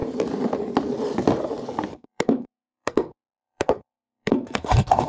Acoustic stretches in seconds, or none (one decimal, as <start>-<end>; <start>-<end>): 0.0-1.9